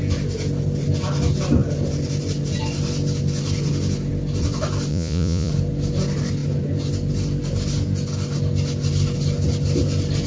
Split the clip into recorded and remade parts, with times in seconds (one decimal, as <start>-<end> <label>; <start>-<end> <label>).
0.0-4.9 recorded; 4.9-5.5 remade; 5.5-10.3 recorded